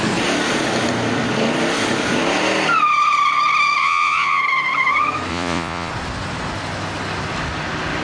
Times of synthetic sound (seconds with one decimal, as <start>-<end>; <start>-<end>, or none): 3.8-4.4; 5.3-5.9

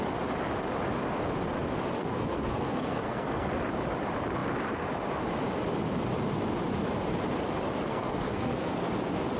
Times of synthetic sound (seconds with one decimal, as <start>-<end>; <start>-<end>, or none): 2.0-3.5; 7.9-8.9

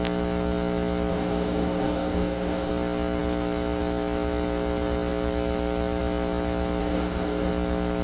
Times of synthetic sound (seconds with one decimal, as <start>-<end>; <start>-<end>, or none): 1.1-2.7; 6.8-7.5

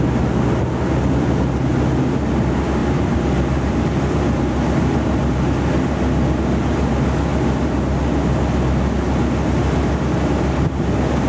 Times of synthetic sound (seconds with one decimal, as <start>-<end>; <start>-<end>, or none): none